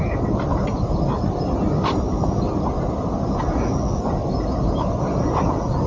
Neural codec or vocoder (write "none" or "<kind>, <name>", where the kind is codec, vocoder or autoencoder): none